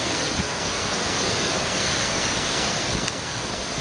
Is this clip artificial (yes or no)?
yes